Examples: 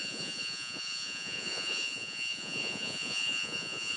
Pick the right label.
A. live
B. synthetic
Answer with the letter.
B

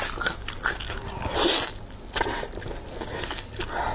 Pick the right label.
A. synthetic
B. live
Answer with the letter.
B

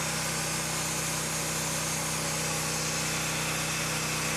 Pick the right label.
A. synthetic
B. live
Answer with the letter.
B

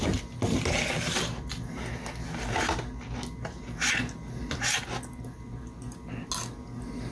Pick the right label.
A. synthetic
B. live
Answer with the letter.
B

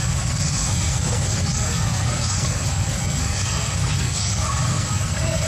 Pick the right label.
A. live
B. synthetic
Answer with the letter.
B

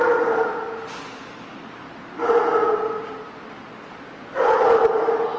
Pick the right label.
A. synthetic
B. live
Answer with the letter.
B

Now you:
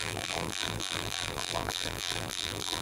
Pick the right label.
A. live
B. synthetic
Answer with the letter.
B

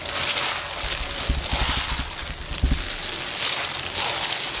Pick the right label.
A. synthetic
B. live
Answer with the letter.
B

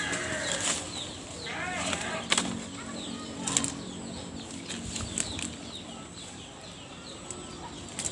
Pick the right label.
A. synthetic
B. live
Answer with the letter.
B